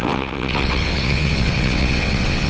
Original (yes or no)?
no